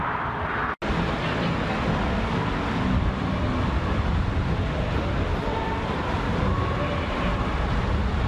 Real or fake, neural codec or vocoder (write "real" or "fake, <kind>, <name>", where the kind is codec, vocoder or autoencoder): real